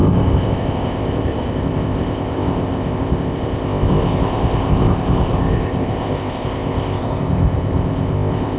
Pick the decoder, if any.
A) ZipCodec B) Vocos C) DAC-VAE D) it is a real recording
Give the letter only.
A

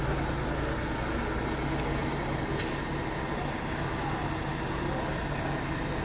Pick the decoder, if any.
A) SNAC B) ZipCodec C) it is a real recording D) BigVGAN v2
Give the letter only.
C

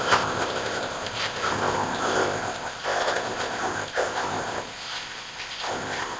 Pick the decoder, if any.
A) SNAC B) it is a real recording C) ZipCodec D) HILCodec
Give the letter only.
C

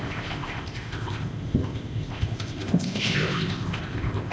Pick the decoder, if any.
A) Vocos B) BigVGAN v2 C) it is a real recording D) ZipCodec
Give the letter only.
D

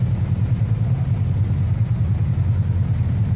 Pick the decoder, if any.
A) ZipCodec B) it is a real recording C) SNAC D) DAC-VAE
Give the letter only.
B